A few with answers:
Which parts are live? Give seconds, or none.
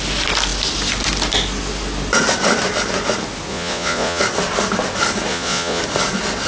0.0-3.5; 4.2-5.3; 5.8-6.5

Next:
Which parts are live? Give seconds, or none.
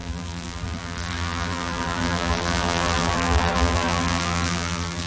none